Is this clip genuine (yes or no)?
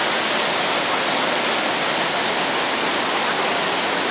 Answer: yes